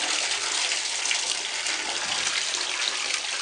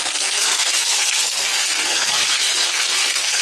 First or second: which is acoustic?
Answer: first